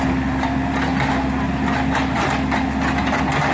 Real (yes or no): yes